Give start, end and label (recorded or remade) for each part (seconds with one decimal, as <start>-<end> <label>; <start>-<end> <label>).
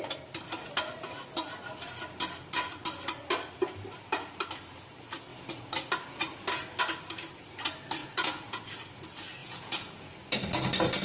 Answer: 0.0-8.0 recorded; 8.0-8.6 remade; 8.6-9.4 recorded; 9.4-10.1 remade; 10.1-11.0 recorded